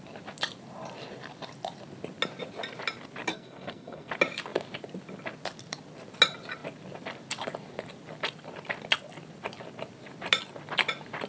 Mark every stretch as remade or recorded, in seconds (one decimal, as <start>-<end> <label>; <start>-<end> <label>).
0.0-3.3 recorded; 3.3-4.1 remade; 4.1-11.3 recorded